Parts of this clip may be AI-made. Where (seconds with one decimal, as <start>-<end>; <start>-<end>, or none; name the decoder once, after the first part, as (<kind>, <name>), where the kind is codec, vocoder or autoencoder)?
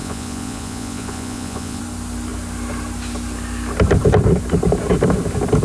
0.0-1.8 (vocoder, Vocos)